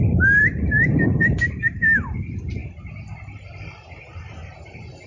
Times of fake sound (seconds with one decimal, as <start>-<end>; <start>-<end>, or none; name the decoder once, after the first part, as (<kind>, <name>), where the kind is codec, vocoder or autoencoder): 0.0-2.6 (vocoder, BigVGAN v2); 3.5-5.1